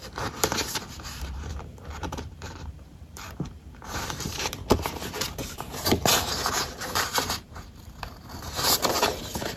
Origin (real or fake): fake